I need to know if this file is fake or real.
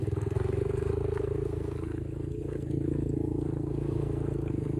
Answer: fake